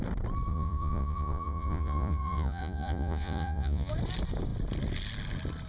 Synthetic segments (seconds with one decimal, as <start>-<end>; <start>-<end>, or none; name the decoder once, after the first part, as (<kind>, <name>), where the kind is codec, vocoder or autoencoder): 0.5-3.9 (vocoder, Vocos)